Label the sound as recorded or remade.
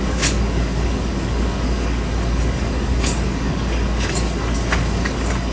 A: remade